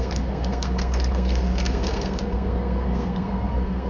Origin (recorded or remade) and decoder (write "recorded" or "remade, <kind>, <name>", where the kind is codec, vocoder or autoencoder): remade, codec, SNAC